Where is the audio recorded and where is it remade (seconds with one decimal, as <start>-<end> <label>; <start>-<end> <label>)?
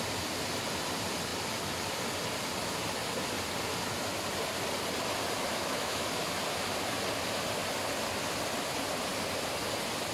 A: 0.0-5.5 recorded; 5.5-6.2 remade; 6.2-10.1 recorded